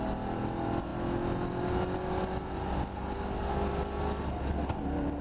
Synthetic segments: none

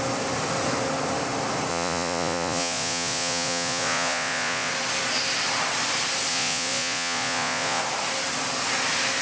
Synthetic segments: 1.7-4.7 (vocoder, Vocos); 6.3-7.8

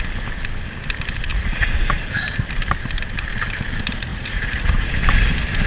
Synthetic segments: 1.3-2.0 (vocoder, Vocos); 4.1-4.9